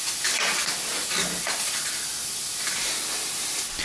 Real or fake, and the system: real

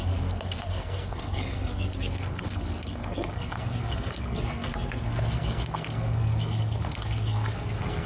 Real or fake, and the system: fake, codec, SNAC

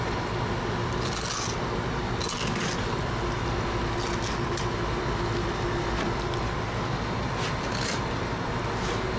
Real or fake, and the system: real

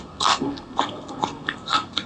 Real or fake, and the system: fake, codec, SNAC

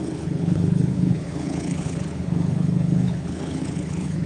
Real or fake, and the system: fake, codec, HILCodec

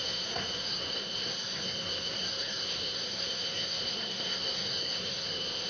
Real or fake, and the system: fake, codec, SNAC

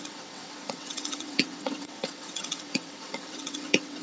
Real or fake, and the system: fake, vocoder, WaveNeXt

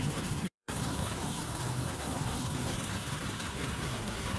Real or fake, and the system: fake, codec, SNAC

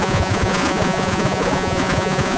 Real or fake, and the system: fake, vocoder, Vocos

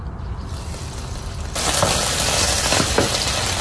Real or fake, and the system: real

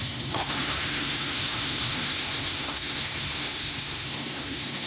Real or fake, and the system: fake, codec, SNAC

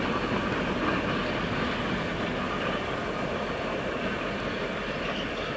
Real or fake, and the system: real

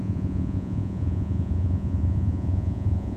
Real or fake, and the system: fake, vocoder, Vocos